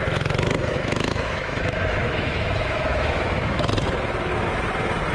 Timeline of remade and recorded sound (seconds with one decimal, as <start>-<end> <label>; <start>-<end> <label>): 0.0-0.6 recorded; 0.6-3.7 remade; 3.7-5.1 recorded